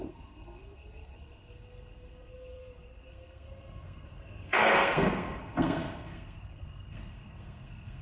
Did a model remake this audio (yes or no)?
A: yes